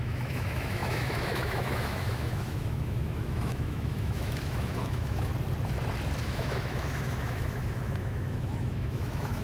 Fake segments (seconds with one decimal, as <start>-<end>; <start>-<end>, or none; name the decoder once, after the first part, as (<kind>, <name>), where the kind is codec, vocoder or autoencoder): 0.0-5.3 (autoencoder, DAC-VAE); 6.2-9.4

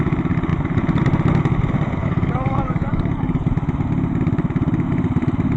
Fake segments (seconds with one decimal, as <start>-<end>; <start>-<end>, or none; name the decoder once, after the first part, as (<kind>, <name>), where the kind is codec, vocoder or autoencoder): 2.0-3.5 (codec, DAC)